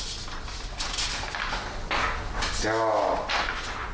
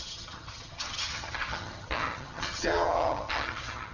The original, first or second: first